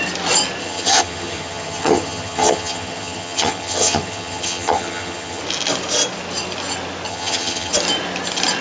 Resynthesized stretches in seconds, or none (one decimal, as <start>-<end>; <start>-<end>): 0.6-5.4; 7.1-7.7